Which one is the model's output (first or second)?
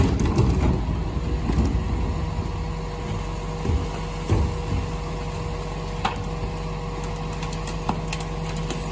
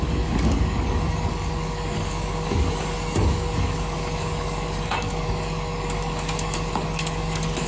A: second